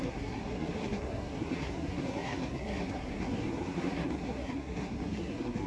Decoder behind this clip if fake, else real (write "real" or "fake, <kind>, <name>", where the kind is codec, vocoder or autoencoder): fake, codec, SNAC